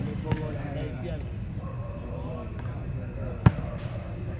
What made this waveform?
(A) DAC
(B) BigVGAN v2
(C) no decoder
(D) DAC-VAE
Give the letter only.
C